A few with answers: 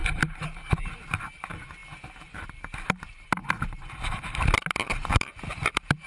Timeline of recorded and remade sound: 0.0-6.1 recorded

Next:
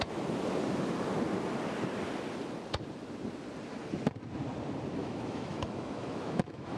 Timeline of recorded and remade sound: 0.0-5.0 recorded; 5.0-6.8 remade

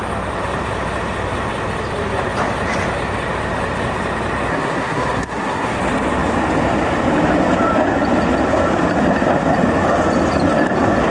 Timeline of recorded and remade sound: 0.0-4.5 recorded; 4.5-5.8 remade; 5.8-11.1 recorded